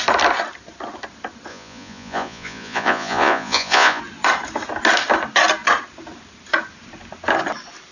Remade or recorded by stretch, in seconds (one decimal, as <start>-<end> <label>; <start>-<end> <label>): 0.0-1.5 recorded; 1.5-4.0 remade; 4.0-7.9 recorded